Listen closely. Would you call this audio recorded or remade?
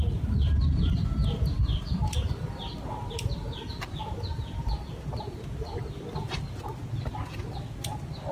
recorded